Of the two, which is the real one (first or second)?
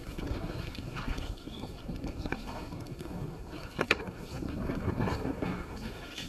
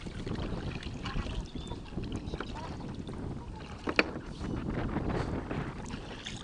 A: second